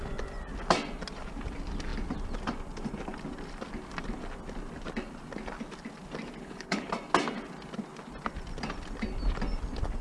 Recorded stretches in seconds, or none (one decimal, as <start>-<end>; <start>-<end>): 0.0-6.4; 6.9-10.0